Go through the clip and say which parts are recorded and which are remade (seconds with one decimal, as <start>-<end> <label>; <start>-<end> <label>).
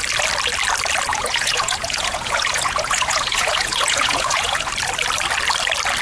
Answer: 0.0-1.1 recorded; 1.1-4.7 remade; 4.7-6.0 recorded